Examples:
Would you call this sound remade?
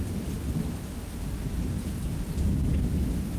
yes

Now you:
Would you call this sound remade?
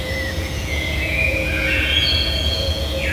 yes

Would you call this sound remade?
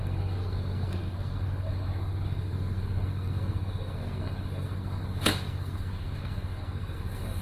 yes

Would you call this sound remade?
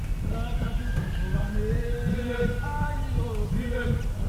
no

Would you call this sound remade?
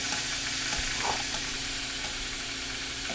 yes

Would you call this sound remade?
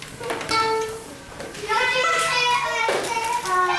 yes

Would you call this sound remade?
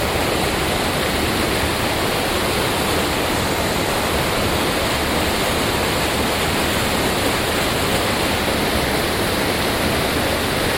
no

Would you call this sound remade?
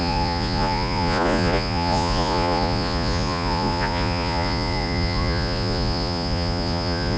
yes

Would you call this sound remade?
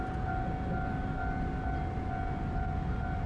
no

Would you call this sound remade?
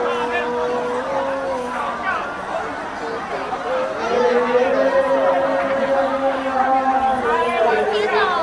no